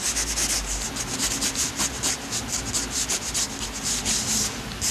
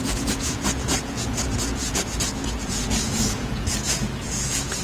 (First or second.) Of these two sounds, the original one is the first